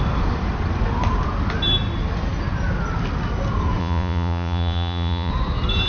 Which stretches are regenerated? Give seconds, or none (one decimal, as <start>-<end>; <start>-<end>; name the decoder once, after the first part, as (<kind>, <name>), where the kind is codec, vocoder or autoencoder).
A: 3.8-5.3 (vocoder, Vocos)